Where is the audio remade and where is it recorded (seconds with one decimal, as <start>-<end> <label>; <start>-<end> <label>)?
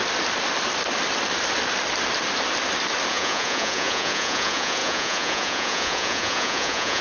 0.0-3.1 recorded; 3.1-7.0 remade